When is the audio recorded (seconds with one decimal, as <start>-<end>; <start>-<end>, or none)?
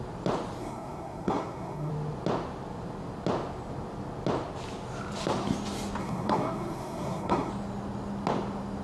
0.0-0.6; 1.9-6.0; 7.5-8.8